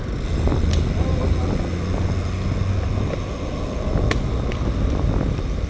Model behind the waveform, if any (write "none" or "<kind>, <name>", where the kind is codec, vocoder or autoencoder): none